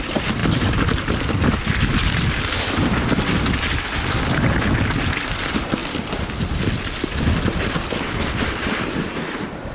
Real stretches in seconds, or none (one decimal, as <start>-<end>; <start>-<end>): 0.0-9.7